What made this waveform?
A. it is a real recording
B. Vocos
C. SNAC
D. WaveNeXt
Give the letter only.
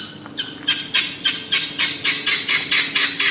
A